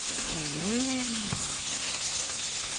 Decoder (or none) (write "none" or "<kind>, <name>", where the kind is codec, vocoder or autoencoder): codec, SNAC